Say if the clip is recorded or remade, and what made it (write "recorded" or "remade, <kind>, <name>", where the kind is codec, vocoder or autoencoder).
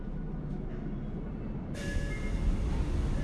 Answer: recorded